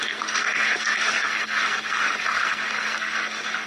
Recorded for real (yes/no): no